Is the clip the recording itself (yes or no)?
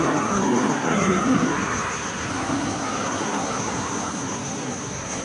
no